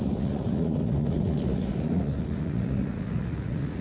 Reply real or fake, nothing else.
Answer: fake